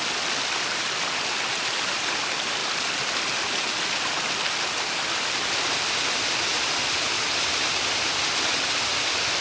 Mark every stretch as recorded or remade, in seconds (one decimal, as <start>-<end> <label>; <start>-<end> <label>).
0.0-9.4 recorded

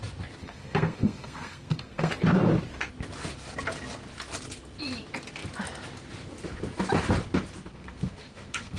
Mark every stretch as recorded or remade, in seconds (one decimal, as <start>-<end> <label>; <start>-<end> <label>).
0.0-0.4 recorded; 0.4-2.1 remade; 2.1-7.7 recorded; 7.7-8.8 remade

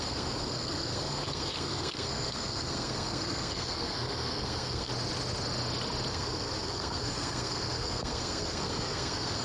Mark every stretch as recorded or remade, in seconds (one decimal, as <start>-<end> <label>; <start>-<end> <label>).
0.0-4.9 remade; 4.9-6.1 recorded; 6.1-9.4 remade

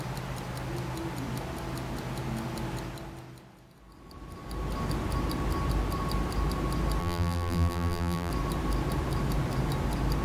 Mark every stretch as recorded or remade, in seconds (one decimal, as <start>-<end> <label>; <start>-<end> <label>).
0.0-7.0 recorded; 7.0-8.3 remade; 8.3-10.2 recorded

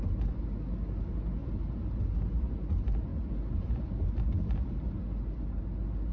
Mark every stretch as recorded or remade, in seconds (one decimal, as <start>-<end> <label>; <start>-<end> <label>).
0.0-1.4 recorded; 1.4-2.0 remade; 2.0-6.1 recorded

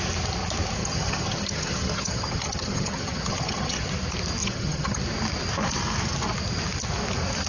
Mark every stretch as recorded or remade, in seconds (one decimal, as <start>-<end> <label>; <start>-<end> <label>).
0.0-0.8 recorded; 0.8-3.9 remade; 3.9-4.4 recorded; 4.4-5.0 remade; 5.0-7.5 recorded